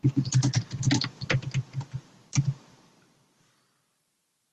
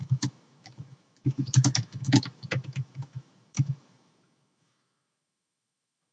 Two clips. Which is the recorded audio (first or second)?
first